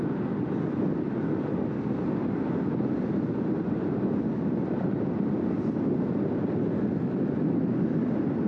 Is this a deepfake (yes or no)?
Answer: no